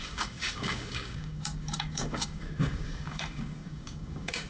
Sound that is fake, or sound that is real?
fake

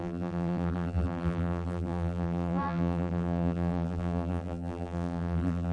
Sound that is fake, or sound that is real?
fake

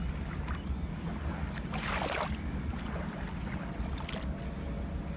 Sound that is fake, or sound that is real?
real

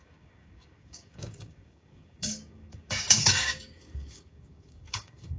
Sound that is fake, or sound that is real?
fake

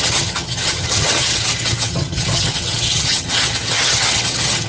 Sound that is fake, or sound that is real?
fake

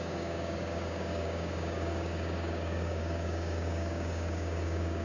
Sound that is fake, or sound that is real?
fake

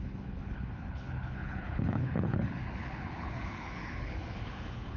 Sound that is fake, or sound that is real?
fake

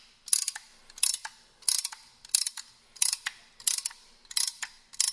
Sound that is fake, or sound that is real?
real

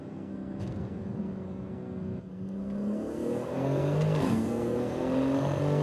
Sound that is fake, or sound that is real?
fake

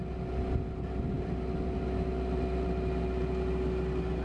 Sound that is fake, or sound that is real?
real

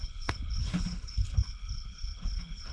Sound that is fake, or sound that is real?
fake